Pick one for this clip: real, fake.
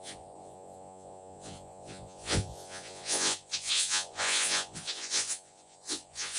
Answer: fake